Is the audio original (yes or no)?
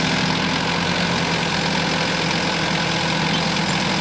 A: yes